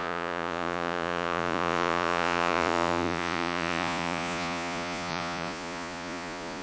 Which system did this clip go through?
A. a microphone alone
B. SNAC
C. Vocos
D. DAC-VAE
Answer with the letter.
C